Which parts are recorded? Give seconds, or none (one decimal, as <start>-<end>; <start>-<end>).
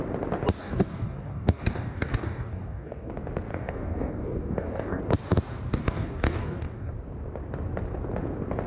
0.0-0.6; 3.1-3.5; 5.0-5.8; 6.9-8.7